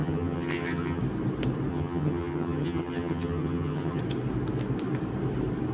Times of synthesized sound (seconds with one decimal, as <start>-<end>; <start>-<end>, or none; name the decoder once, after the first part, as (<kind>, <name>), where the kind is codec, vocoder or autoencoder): 0.0-1.0 (vocoder, HiFi-GAN); 1.7-4.0